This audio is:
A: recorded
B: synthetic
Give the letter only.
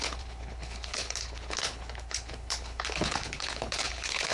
B